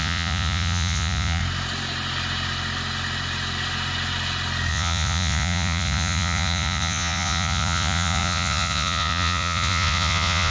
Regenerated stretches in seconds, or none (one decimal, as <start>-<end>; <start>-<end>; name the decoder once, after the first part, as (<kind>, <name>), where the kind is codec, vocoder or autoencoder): 0.0-1.4 (vocoder, Vocos); 4.7-10.5